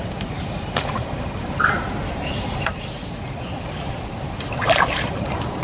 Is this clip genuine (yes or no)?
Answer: no